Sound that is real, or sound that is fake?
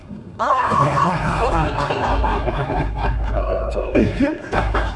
fake